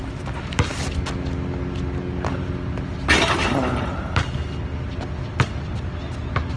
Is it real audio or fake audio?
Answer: real